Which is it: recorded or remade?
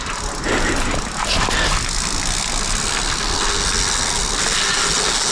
recorded